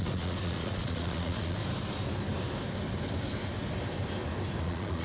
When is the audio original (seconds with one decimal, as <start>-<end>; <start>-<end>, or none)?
1.6-4.6

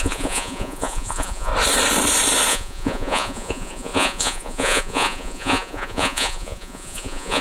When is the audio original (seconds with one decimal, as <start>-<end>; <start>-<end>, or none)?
1.5-2.5

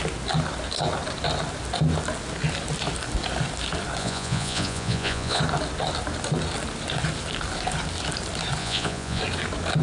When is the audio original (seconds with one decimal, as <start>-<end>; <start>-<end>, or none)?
0.0-4.0; 5.4-8.6; 9.2-9.8

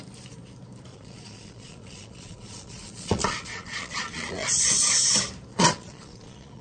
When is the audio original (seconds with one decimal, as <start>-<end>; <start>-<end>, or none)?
0.0-0.9; 4.9-5.5

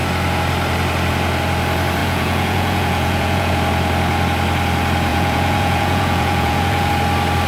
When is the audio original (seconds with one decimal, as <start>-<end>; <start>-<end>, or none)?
0.0-2.0; 3.5-5.1; 6.9-7.5